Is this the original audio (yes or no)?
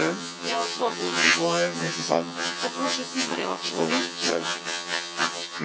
no